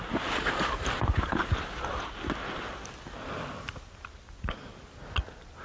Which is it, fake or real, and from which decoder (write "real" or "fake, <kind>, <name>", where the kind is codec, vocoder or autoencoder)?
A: real